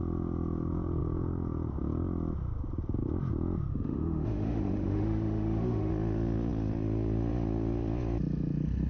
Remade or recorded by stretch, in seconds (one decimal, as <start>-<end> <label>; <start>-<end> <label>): 0.0-3.7 recorded; 3.7-5.9 remade; 5.9-8.9 recorded